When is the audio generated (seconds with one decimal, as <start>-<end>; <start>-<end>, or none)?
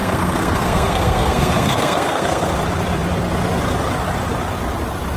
0.0-2.5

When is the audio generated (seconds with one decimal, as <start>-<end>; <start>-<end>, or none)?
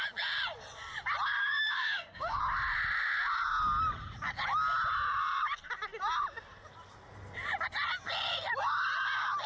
1.4-2.4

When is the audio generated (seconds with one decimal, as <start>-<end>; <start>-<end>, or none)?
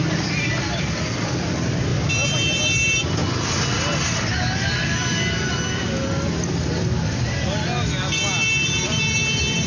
none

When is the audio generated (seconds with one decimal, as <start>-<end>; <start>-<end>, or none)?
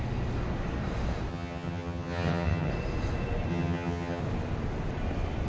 1.3-2.7; 3.5-4.2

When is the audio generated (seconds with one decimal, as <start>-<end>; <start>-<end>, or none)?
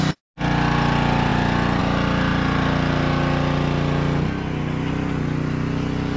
none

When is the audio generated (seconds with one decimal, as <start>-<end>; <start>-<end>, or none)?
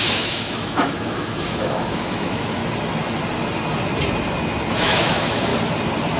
0.0-2.6; 4.7-5.5